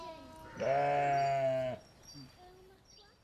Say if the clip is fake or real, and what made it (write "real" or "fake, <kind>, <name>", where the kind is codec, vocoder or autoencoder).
real